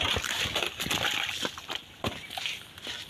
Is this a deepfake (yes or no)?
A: no